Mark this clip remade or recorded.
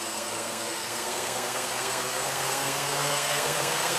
remade